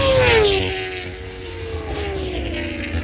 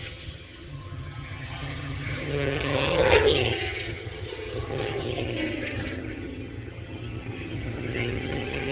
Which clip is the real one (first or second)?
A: first